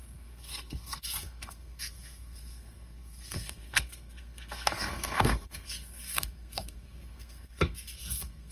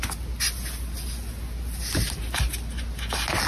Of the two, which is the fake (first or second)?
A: first